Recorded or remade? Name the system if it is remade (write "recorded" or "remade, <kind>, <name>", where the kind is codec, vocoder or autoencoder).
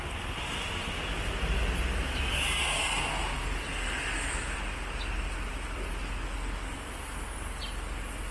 recorded